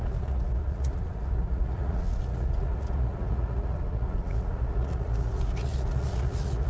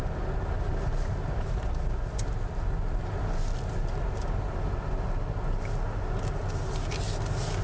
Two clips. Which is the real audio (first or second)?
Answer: second